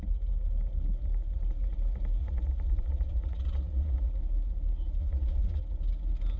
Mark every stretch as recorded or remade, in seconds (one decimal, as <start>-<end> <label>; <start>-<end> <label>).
0.0-2.2 recorded; 2.2-4.1 remade; 4.1-5.0 recorded; 5.0-5.6 remade; 5.6-6.4 recorded